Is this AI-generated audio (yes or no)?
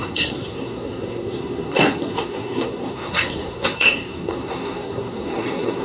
yes